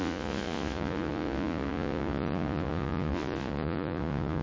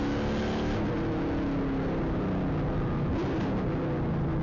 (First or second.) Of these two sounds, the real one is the second